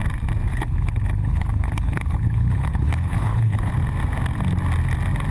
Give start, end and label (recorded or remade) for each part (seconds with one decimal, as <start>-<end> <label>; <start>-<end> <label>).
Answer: 0.0-0.5 recorded; 0.5-3.7 remade; 3.7-5.3 recorded